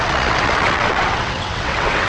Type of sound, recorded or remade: remade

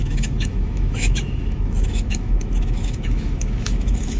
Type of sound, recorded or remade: remade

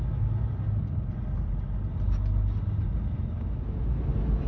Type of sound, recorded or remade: recorded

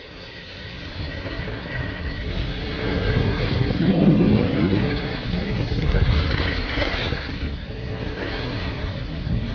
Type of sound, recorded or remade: remade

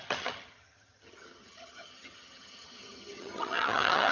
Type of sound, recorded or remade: remade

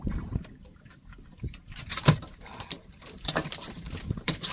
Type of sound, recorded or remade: remade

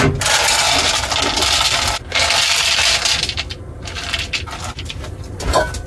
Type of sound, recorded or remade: recorded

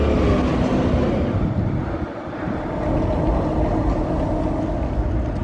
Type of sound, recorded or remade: recorded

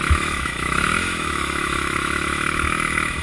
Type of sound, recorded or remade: remade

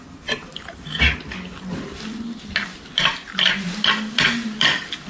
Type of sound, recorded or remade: recorded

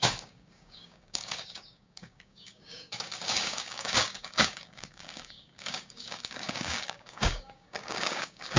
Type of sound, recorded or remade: remade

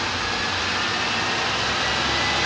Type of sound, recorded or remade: recorded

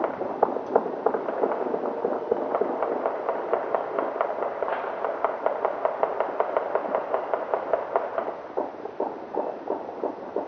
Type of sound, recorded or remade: recorded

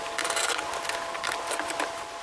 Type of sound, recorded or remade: recorded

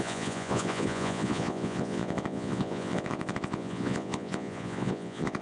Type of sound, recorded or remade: remade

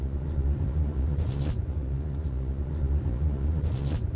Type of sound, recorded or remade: remade